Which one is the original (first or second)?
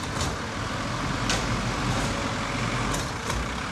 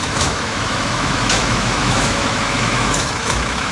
first